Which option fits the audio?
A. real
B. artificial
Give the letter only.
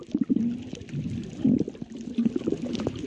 A